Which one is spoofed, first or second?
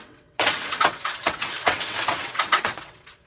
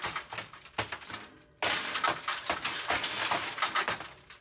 first